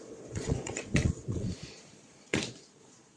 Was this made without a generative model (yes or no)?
no